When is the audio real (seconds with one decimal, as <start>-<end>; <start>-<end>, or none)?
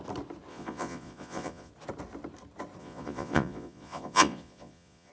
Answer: 0.0-0.5; 1.7-2.8